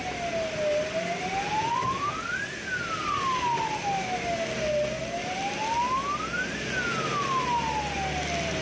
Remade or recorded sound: recorded